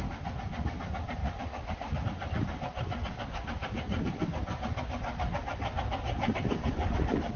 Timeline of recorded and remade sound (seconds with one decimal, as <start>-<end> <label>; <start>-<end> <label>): 0.0-1.2 recorded; 1.2-2.0 remade; 2.0-7.4 recorded